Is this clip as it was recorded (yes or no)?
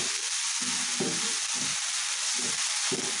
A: yes